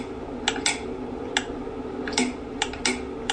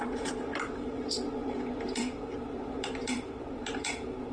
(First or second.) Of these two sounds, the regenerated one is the second